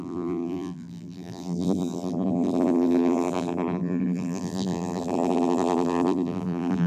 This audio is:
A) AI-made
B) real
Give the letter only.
A